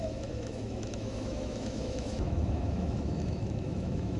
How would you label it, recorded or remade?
remade